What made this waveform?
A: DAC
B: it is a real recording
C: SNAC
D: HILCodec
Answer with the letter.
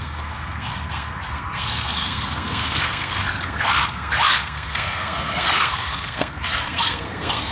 C